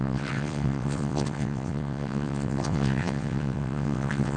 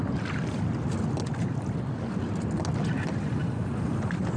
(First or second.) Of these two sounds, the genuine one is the second